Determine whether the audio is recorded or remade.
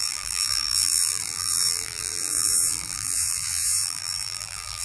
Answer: remade